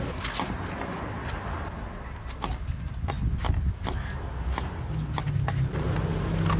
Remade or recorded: recorded